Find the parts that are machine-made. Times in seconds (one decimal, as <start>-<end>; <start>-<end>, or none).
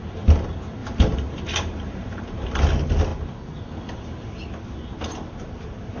0.8-2.6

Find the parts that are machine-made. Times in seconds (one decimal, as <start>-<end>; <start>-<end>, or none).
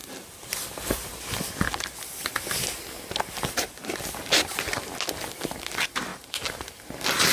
6.1-6.8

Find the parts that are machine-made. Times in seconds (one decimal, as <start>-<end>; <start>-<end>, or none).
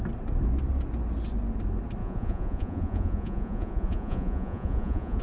2.0-5.2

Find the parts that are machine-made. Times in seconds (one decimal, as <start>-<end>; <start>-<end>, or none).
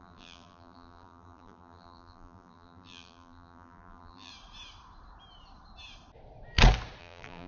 0.0-4.3; 7.0-7.5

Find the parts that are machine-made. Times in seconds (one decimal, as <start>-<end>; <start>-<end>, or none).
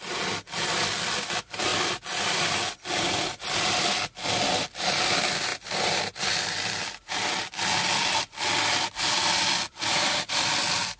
none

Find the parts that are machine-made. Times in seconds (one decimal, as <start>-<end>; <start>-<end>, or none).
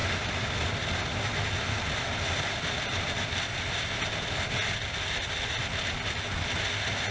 none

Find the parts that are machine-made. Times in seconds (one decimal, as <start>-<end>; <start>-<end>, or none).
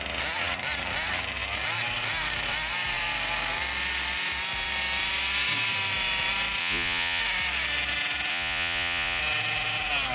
6.6-7.2; 8.3-9.2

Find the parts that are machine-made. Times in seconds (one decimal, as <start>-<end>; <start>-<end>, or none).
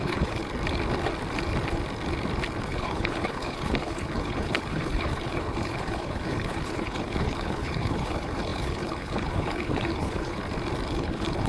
0.0-0.4; 2.6-10.4; 10.9-11.5